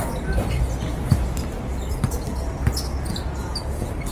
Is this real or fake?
real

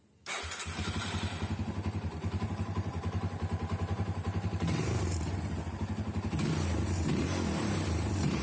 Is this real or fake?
fake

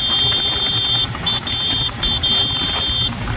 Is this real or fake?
fake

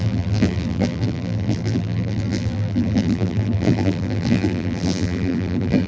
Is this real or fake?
fake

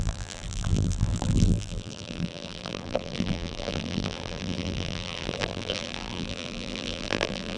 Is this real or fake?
fake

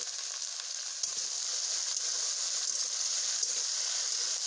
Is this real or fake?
real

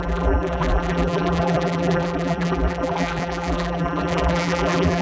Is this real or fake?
fake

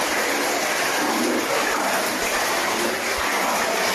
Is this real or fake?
fake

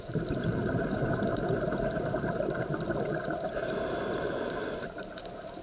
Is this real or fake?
fake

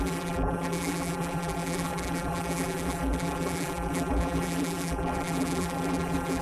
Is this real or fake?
fake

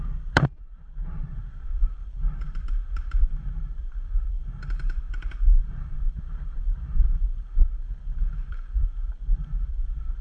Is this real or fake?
fake